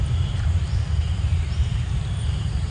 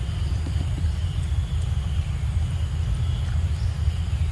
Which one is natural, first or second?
second